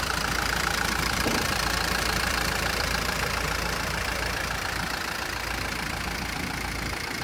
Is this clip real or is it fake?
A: fake